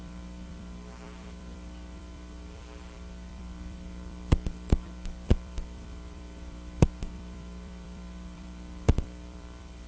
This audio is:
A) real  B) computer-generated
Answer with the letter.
B